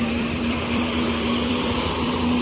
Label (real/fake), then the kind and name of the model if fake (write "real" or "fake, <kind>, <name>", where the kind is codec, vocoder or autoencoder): fake, vocoder, BigVGAN v2